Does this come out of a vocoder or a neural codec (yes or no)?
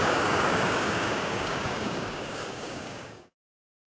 yes